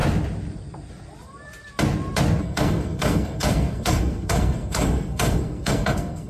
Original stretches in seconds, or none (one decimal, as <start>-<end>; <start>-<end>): 0.0-2.4